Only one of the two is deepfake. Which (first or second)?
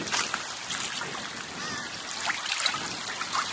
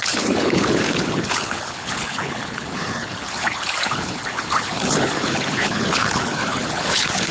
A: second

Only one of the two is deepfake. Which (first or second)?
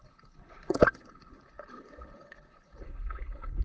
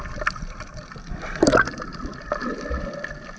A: first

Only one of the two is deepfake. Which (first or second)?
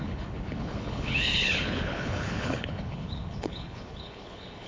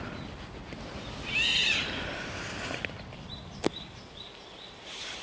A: first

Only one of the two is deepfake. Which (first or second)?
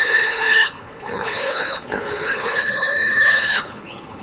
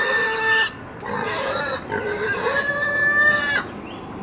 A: first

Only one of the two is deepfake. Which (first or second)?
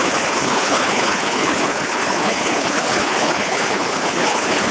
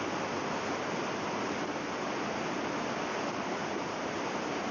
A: first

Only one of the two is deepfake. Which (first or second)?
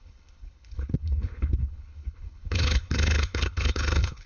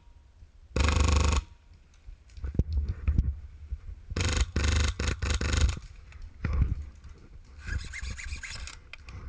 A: first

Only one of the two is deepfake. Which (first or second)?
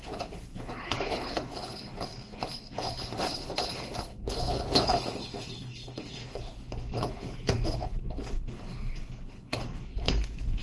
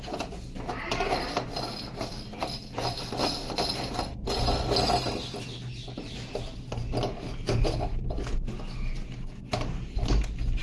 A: first